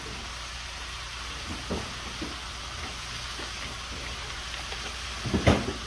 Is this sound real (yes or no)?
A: yes